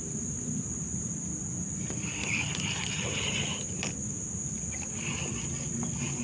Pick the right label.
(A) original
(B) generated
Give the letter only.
A